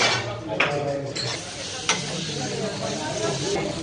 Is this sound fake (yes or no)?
no